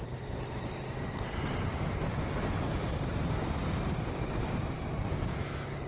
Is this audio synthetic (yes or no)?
no